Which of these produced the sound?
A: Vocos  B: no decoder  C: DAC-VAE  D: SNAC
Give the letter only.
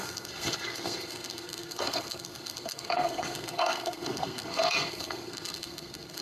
D